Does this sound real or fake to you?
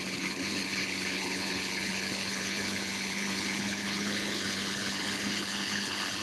fake